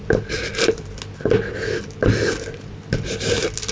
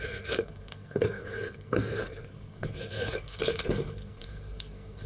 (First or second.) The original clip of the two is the first